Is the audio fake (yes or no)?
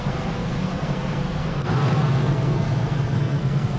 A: yes